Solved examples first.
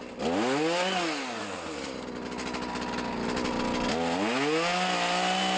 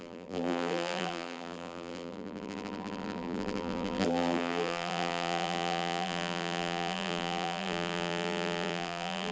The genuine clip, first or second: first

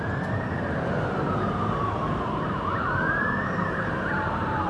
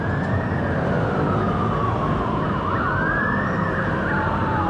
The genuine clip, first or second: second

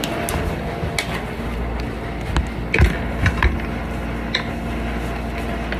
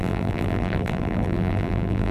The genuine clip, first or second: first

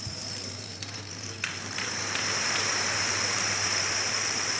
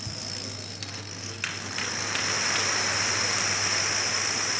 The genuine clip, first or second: second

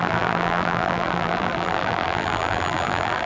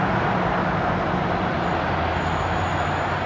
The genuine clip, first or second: second